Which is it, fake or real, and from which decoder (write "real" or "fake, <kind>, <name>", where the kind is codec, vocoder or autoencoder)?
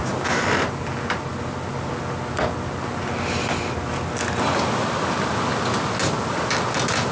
real